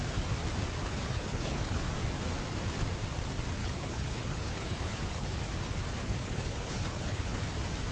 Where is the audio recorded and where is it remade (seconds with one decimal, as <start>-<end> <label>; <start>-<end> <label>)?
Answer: 0.0-0.8 recorded; 0.8-1.8 remade; 1.8-3.6 recorded; 3.6-5.4 remade; 5.4-6.0 recorded; 6.0-7.4 remade; 7.4-7.9 recorded